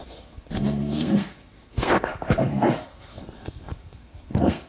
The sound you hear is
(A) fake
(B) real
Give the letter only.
A